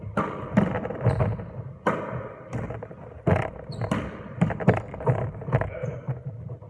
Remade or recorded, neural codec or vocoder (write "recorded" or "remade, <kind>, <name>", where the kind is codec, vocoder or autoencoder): recorded